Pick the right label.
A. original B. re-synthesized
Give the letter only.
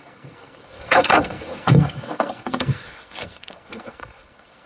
B